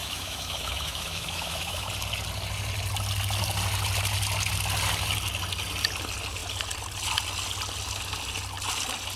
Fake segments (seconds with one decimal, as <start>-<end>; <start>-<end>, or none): 0.0-1.9